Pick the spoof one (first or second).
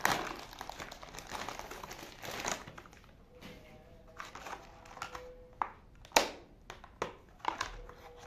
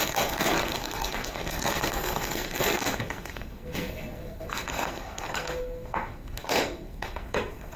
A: second